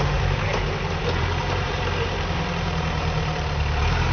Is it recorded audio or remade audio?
remade